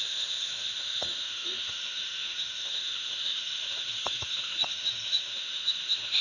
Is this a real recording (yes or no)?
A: no